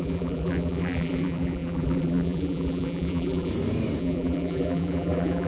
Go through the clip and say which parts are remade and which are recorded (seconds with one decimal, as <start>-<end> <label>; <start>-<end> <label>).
0.0-3.5 remade; 3.5-4.0 recorded; 4.0-5.5 remade